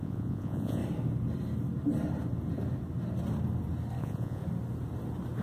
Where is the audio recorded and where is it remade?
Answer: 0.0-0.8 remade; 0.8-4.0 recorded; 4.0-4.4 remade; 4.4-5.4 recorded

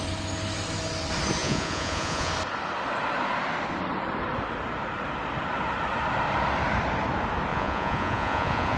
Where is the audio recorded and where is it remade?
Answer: 0.0-1.4 recorded; 1.4-2.3 remade; 2.3-7.5 recorded; 7.5-8.8 remade

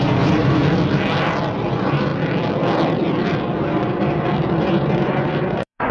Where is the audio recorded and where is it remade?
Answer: 0.0-0.6 remade; 0.6-1.7 recorded; 1.7-2.1 remade; 2.1-4.6 recorded; 4.6-5.9 remade

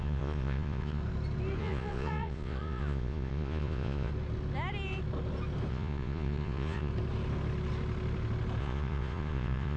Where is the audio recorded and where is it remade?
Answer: 0.0-1.0 remade; 1.0-1.6 recorded; 1.6-4.1 remade; 4.1-5.7 recorded; 5.7-6.9 remade; 6.9-8.6 recorded; 8.6-9.8 remade

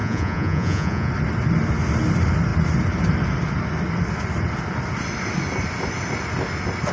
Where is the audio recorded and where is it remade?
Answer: 0.0-1.1 remade; 1.1-6.9 recorded

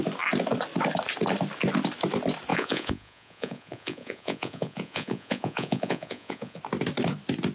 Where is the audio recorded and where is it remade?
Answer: 0.0-2.5 recorded; 2.5-6.6 remade; 6.6-7.5 recorded